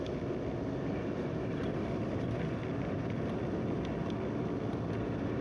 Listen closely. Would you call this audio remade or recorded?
recorded